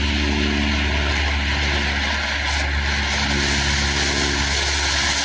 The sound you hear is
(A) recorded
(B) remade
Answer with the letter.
A